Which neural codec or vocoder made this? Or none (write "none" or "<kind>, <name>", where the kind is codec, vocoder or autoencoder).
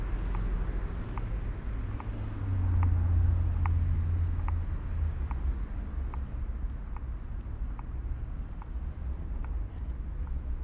none